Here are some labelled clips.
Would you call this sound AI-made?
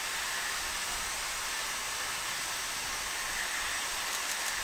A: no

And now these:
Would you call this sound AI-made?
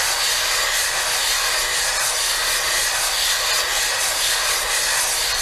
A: no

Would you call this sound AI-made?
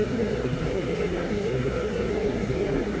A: yes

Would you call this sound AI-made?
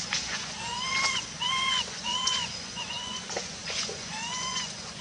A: yes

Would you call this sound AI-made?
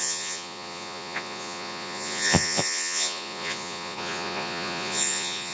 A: yes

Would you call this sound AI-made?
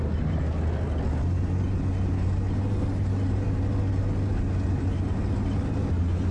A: no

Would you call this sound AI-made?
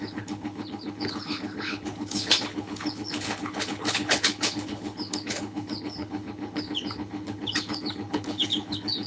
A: yes